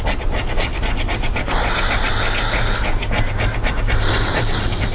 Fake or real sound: real